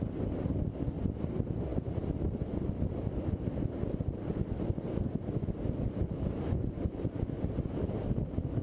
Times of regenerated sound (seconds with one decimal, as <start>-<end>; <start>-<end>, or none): none